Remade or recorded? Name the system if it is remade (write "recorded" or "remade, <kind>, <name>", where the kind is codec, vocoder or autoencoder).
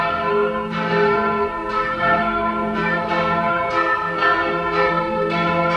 remade, codec, SNAC